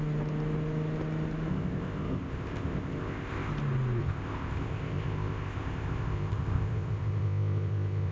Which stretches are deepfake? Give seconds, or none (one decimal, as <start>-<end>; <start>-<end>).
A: 1.5-3.5; 4.0-8.1